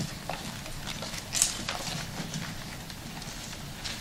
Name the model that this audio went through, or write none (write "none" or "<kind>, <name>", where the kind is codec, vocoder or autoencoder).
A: none